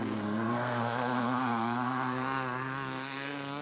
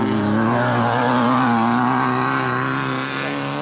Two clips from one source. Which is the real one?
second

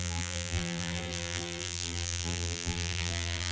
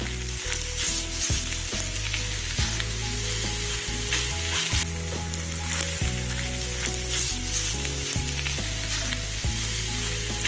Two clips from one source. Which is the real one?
second